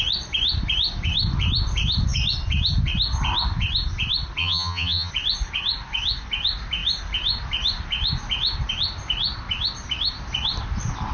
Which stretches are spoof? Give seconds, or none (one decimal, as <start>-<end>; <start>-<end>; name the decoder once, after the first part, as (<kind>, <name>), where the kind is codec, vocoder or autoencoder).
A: 4.4-5.1 (vocoder, HiFi-GAN)